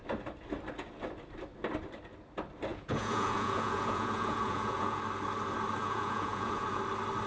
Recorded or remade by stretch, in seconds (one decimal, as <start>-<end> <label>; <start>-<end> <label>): 0.0-2.7 recorded; 2.7-5.0 remade; 5.0-5.8 recorded; 5.8-6.8 remade; 6.8-7.3 recorded